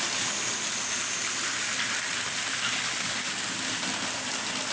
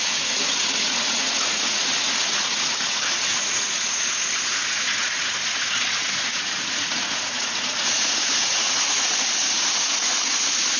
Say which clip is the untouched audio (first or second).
first